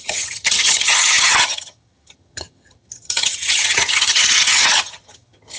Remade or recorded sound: remade